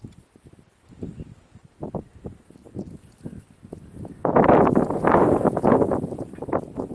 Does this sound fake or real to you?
real